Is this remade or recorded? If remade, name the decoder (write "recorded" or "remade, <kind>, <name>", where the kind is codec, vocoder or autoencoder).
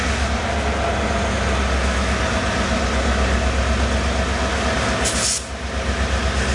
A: recorded